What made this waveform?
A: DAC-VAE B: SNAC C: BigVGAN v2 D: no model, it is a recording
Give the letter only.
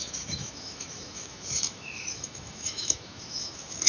A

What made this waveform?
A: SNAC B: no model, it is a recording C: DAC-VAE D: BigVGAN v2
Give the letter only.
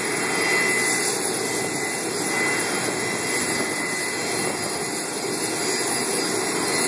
B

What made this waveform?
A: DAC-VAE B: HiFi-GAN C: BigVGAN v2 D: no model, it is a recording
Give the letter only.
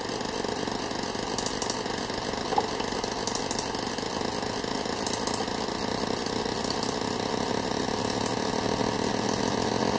D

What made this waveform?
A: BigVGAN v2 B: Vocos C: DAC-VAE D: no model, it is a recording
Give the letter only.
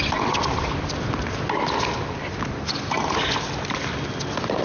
D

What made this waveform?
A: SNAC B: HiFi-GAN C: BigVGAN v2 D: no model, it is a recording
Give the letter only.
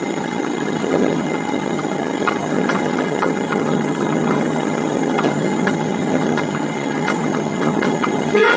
B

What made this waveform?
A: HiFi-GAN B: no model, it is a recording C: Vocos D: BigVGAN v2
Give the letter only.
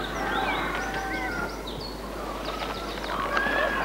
B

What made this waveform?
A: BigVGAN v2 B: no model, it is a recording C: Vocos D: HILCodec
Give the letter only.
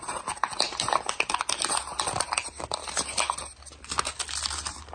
B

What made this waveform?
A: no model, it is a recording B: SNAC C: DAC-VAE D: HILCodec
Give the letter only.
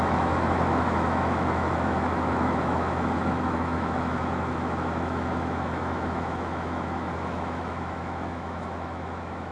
C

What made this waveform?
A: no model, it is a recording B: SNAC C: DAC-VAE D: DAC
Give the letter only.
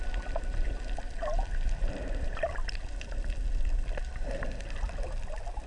A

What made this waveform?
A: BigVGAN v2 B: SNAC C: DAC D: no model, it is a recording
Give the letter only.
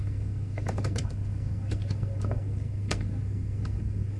B